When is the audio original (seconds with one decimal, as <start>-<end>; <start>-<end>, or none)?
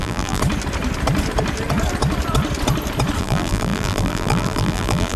0.4-3.2